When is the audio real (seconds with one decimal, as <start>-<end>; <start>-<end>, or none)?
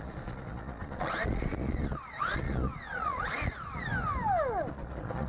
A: 3.9-4.7